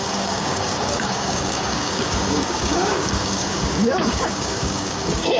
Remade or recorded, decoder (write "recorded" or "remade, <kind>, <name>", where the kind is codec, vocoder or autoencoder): remade, codec, DAC